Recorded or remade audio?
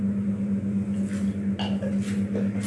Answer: recorded